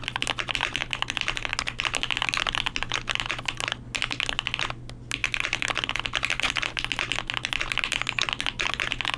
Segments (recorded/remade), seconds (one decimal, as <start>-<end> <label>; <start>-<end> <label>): 0.0-9.2 recorded